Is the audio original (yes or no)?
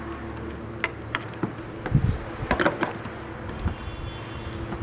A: yes